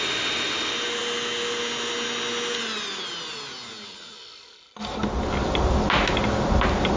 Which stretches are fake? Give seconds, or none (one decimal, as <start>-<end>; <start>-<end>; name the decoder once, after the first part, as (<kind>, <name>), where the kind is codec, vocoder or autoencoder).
none